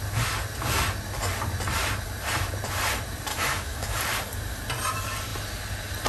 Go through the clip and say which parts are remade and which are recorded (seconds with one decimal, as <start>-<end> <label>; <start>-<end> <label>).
0.0-3.3 recorded; 3.3-4.0 remade; 4.0-6.1 recorded